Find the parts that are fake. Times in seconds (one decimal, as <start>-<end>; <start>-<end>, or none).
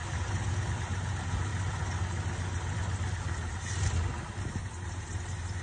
none